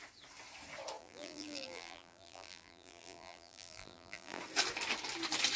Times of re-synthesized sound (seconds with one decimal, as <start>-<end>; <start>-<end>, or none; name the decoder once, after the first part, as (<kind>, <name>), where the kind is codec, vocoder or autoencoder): 1.0-4.4 (vocoder, BigVGAN v2)